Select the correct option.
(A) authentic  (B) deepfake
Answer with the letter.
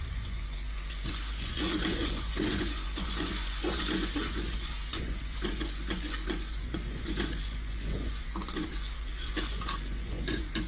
B